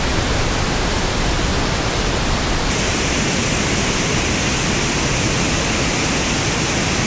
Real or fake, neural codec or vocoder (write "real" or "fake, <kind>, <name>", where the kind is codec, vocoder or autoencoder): real